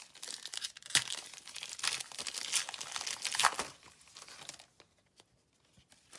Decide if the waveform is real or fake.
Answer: real